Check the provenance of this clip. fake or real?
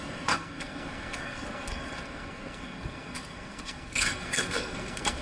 fake